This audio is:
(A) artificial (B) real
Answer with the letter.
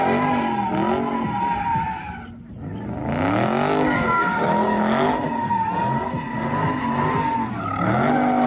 B